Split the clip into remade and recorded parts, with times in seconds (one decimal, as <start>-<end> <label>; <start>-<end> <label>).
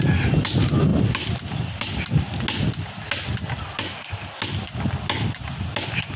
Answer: 0.0-6.2 recorded